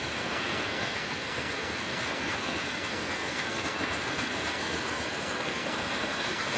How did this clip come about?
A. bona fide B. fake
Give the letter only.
B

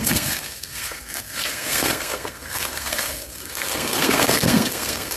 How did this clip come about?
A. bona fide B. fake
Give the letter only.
B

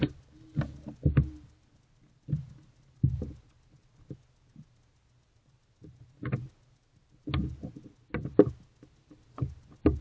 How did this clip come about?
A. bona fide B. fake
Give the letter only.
A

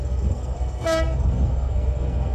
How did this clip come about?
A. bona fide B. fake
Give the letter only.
B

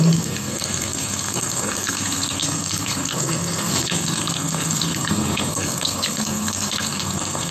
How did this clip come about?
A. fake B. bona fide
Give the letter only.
A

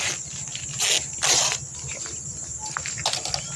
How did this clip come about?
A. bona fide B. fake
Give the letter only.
A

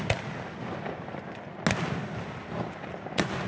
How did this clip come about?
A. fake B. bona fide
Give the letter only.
B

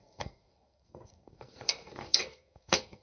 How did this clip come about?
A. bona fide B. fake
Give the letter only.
B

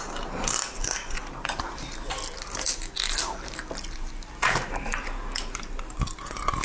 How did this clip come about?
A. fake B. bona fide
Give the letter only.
B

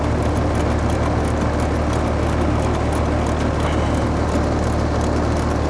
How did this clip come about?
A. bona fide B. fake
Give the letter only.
A